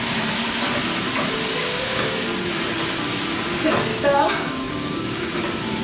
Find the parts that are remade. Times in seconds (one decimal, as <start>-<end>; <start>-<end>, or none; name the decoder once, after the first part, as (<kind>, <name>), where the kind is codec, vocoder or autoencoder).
1.6-2.3 (codec, DAC); 3.9-5.3